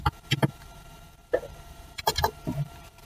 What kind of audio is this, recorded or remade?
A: remade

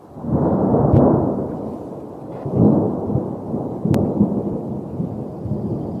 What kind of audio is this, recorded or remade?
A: recorded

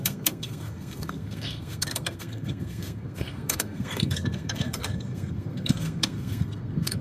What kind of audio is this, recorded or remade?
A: remade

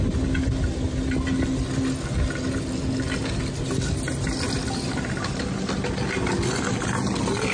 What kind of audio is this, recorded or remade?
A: recorded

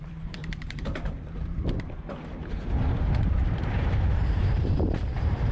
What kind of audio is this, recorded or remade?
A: remade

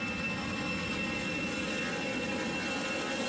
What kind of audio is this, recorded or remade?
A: recorded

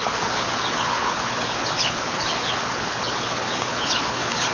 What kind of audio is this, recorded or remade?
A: remade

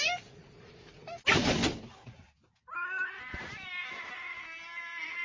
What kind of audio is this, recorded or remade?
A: recorded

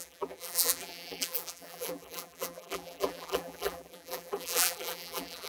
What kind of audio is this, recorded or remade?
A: remade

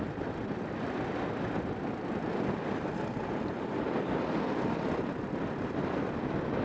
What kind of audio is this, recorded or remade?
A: recorded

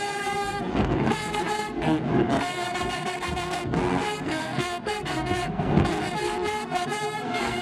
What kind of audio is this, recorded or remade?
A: remade